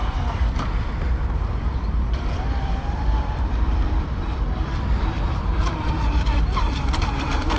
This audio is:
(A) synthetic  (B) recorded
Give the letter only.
A